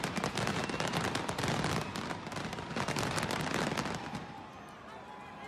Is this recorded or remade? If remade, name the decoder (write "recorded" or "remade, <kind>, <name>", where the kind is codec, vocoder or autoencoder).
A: recorded